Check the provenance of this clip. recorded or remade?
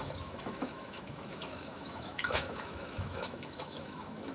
remade